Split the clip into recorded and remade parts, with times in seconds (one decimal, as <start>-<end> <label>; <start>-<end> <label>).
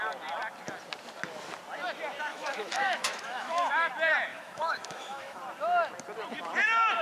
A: 0.0-2.3 recorded; 2.3-3.9 remade; 3.9-4.3 recorded; 4.3-5.4 remade; 5.4-7.0 recorded